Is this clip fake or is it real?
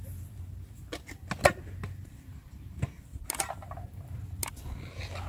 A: real